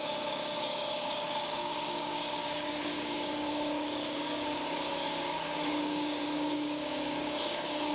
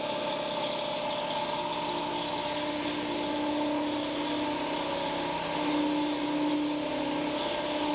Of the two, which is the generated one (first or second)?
first